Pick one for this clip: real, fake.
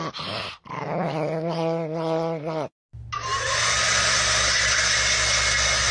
real